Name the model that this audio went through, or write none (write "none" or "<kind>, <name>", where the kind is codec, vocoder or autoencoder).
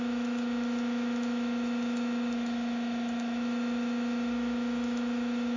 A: autoencoder, DAC-VAE